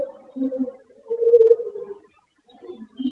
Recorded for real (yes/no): yes